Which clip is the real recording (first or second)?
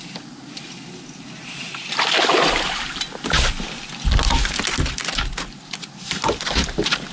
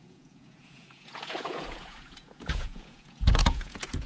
first